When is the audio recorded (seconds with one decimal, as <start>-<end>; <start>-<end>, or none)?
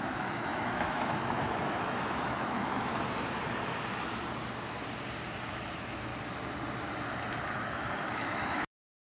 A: 2.9-5.5; 6.1-7.5